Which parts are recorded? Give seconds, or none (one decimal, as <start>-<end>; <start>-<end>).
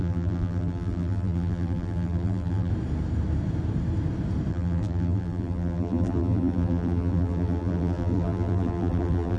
2.7-4.5